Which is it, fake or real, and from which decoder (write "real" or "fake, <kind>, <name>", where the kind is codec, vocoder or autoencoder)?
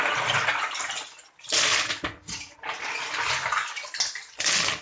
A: real